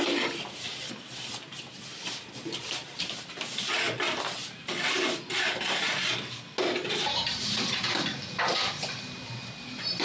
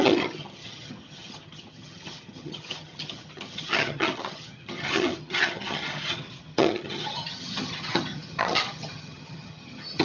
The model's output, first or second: second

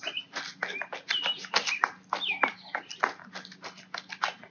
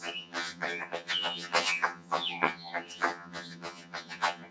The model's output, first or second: second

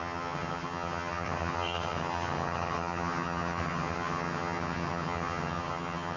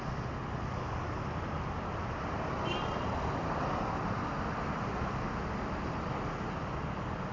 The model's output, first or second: first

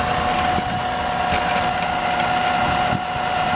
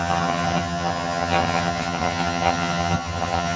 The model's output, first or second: second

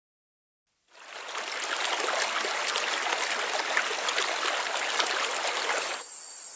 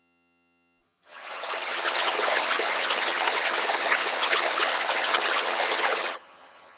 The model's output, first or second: second